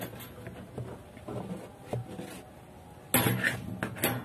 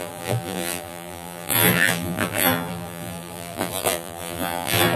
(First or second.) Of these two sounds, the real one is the first